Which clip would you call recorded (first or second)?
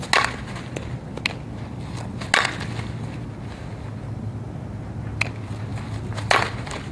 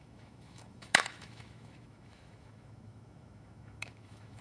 first